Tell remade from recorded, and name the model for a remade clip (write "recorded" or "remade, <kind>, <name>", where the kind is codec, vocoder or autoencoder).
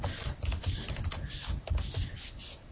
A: recorded